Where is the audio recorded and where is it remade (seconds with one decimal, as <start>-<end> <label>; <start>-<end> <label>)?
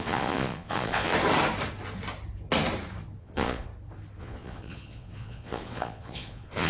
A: 0.0-1.1 remade; 1.1-3.2 recorded; 3.2-3.7 remade; 3.7-4.2 recorded; 4.2-6.7 remade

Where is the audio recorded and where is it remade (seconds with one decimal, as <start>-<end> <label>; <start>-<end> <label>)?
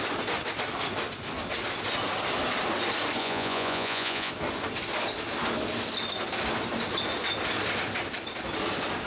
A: 0.0-3.2 recorded; 3.2-4.3 remade; 4.3-9.1 recorded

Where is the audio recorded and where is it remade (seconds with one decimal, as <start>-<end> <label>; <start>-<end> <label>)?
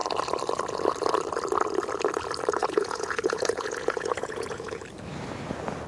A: 0.0-2.6 recorded; 2.6-4.8 remade; 4.8-5.9 recorded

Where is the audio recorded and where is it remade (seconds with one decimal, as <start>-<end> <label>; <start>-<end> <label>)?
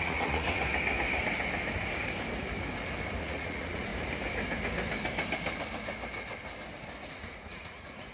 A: 0.0-0.6 remade; 0.6-3.2 recorded; 3.2-3.9 remade; 3.9-7.1 recorded; 7.1-8.1 remade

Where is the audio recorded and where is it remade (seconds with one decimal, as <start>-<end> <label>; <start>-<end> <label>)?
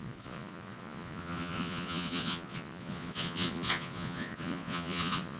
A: 0.0-5.4 remade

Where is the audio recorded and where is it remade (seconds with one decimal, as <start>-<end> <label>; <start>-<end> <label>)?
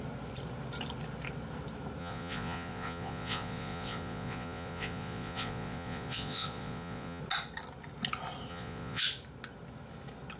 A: 0.0-2.0 recorded; 2.0-7.2 remade; 7.2-8.5 recorded; 8.5-9.0 remade; 9.0-10.4 recorded